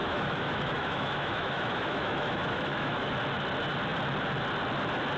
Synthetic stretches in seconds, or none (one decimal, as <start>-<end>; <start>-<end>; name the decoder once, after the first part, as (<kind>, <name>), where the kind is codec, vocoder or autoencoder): 0.0-3.1 (autoencoder, DAC-VAE)